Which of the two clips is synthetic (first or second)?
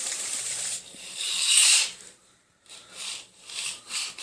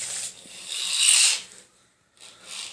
first